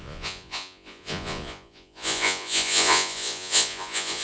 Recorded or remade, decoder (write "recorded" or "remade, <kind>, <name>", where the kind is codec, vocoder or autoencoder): remade, vocoder, Vocos